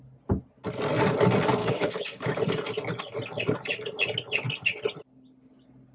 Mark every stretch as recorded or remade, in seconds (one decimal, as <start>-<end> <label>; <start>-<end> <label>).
0.0-1.6 recorded; 1.6-2.4 remade; 2.4-5.9 recorded